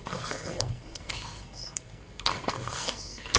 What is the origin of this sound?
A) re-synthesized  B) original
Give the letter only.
A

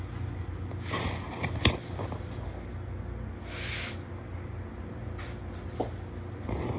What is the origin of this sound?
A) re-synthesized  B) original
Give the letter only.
B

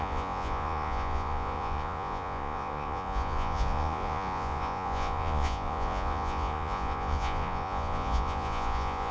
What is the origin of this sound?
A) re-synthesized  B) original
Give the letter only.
A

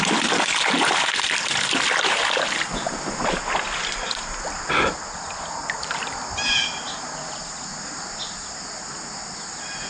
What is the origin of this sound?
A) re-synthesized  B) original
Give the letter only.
B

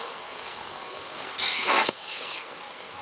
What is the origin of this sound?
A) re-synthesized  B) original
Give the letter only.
A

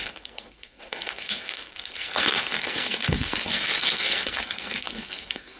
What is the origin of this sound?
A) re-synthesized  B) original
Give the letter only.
A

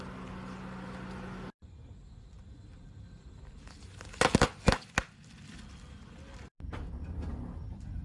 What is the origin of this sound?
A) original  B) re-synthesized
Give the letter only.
A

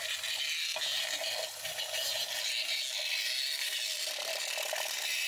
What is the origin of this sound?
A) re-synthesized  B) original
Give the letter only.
B